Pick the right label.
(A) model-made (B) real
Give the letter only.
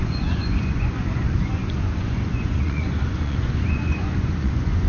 A